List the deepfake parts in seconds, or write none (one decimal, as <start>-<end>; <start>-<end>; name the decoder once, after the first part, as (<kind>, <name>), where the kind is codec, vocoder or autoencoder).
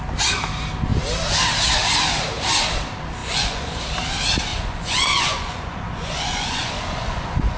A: 3.2-3.8 (vocoder, Vocos); 4.5-7.6